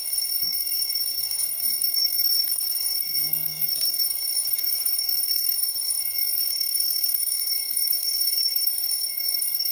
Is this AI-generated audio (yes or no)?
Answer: yes